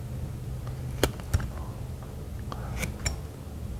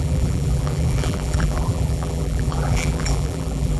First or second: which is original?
first